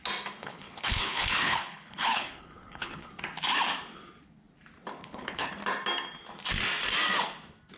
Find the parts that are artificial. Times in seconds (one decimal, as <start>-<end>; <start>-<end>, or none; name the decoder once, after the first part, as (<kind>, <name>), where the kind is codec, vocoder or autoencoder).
0.4-3.1 (codec, HILCodec); 5.0-5.5